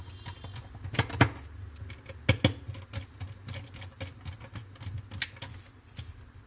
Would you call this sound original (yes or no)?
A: yes